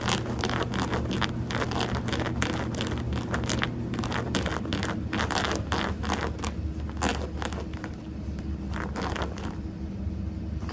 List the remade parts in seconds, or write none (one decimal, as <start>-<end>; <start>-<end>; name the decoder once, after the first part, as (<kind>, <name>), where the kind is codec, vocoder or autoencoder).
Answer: none